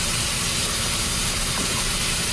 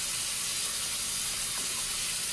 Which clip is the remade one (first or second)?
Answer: first